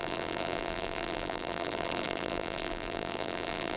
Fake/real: fake